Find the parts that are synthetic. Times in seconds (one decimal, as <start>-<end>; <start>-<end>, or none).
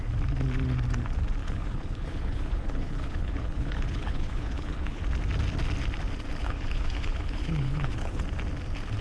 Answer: 1.4-5.0; 6.4-8.2